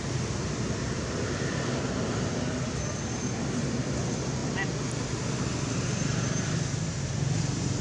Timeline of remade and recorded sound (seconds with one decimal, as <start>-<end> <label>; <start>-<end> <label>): 0.0-7.8 recorded